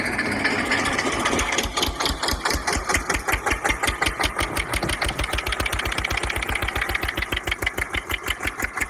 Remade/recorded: recorded